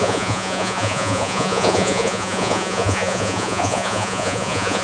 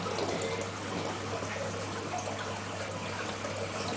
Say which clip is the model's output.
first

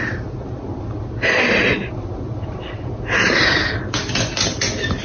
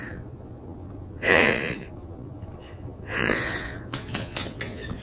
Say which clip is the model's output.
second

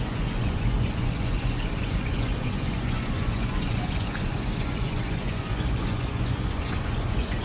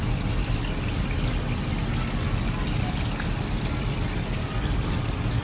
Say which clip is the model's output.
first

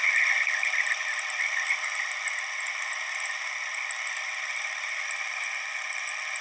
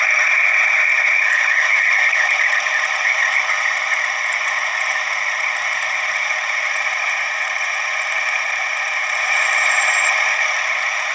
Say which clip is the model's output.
second